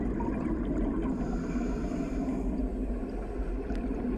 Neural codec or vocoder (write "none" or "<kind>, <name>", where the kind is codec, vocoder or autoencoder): none